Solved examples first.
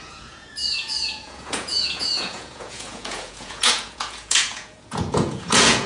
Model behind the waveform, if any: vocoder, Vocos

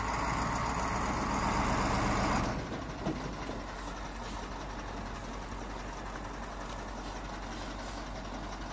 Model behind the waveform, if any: none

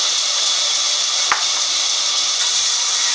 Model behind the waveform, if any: none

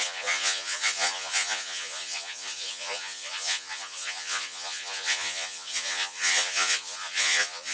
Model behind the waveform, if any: vocoder, Vocos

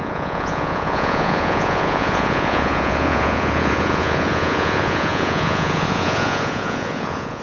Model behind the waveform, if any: vocoder, Vocos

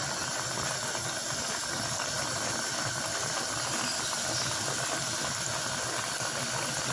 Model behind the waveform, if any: none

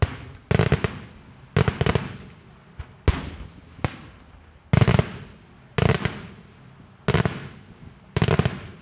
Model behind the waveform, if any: none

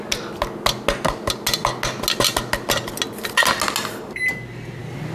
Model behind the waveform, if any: none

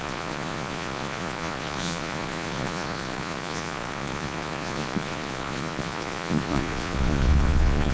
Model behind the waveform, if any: vocoder, Vocos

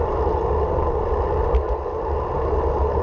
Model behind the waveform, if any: none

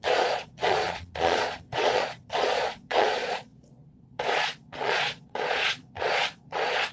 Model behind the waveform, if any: vocoder, Vocos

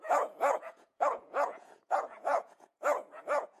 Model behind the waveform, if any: vocoder, Vocos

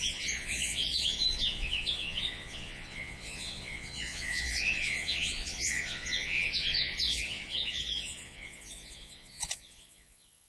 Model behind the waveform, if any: vocoder, Vocos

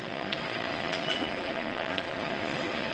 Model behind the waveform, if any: vocoder, Vocos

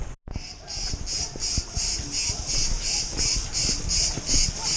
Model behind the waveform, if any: none